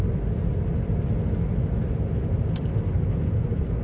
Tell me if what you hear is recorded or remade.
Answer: recorded